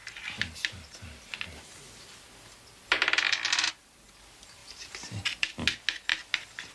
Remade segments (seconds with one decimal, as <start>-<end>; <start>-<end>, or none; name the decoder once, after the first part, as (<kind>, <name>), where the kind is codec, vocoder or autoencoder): 4.6-5.2 (vocoder, BigVGAN v2)